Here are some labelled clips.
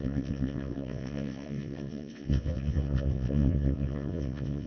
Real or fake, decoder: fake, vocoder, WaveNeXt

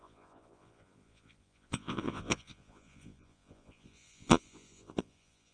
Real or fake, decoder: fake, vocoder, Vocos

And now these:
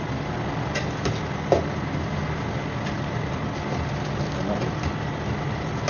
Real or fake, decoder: real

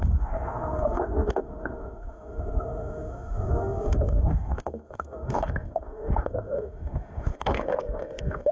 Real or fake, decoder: fake, autoencoder, DAC-VAE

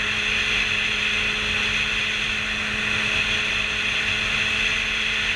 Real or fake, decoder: real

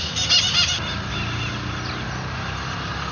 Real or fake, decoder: real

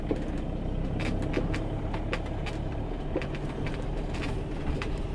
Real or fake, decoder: real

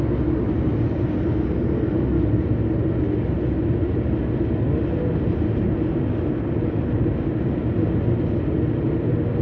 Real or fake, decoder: real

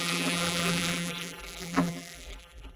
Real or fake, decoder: fake, vocoder, BigVGAN v2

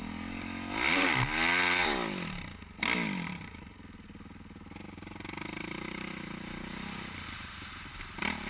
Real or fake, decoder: real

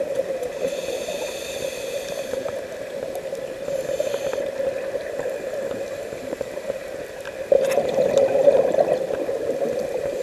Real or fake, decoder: fake, vocoder, BigVGAN v2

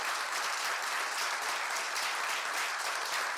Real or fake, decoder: real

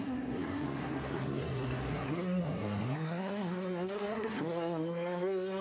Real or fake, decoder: fake, codec, SNAC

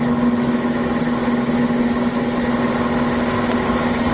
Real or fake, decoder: real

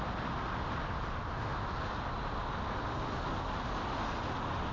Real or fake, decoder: real